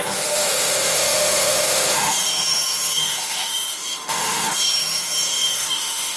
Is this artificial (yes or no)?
yes